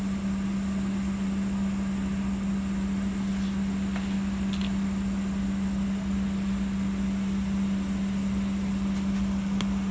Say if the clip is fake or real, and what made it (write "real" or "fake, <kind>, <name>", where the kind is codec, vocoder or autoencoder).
real